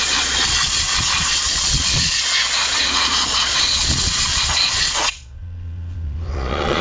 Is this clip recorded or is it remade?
remade